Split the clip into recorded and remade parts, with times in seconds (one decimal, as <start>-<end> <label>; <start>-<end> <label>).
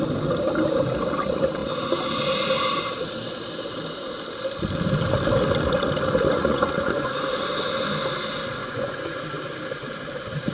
0.0-6.3 recorded; 6.3-7.1 remade; 7.1-8.6 recorded; 8.6-9.2 remade; 9.2-10.5 recorded